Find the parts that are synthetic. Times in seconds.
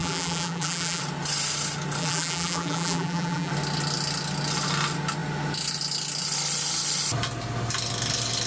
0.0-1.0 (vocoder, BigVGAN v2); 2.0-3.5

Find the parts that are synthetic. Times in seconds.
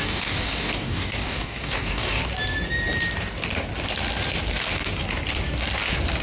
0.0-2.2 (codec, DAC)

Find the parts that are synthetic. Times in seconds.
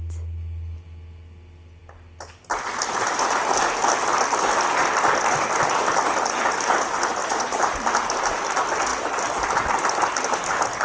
none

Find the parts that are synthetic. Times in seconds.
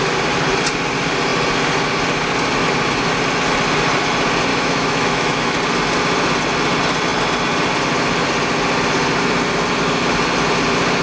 4.5-5.6 (autoencoder, DAC-VAE)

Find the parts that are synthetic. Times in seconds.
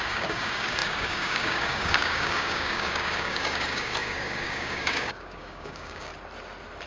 0.0-6.1 (codec, DAC)